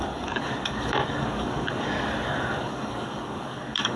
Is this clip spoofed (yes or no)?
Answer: yes